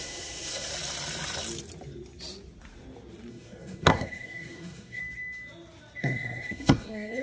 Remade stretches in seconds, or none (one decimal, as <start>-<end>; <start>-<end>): 0.0-0.7; 3.3-5.0; 6.0-7.2